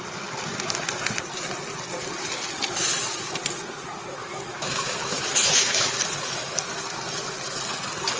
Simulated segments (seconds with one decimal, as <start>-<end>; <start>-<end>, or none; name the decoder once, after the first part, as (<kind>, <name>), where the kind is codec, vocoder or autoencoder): 4.2-5.8 (autoencoder, DAC-VAE)